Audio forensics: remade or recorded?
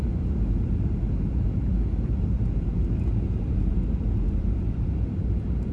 remade